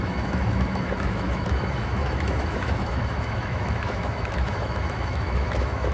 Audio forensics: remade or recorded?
remade